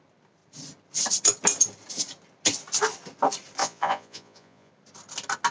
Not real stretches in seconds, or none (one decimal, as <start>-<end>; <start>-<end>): 3.6-4.7